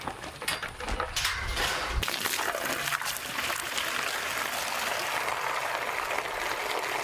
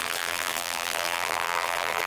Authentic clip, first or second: first